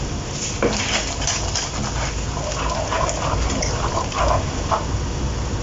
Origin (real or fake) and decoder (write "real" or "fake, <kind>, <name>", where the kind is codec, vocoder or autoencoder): real